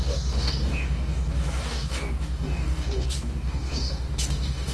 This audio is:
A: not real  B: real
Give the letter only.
A